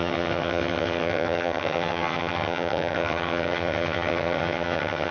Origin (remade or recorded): remade